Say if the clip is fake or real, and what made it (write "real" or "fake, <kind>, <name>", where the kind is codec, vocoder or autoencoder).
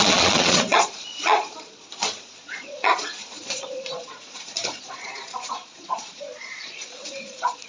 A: fake, vocoder, Vocos